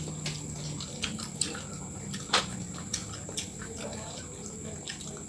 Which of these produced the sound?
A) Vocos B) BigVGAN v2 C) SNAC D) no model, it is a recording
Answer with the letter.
D